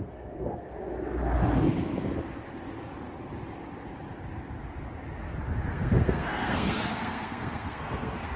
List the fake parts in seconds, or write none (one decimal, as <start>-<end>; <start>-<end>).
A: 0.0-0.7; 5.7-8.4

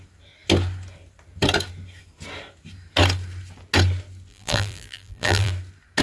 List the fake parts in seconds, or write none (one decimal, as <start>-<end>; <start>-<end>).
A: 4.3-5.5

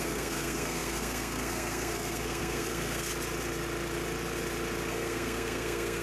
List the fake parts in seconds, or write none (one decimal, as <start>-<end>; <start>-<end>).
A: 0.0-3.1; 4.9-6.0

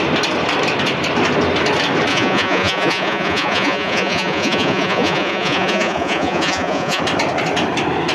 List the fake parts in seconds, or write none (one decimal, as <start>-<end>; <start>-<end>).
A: 2.1-7.0